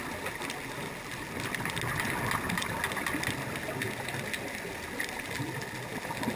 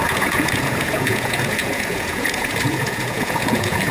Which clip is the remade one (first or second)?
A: second